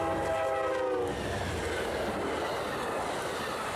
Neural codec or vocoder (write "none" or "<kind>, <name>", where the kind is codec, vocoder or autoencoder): none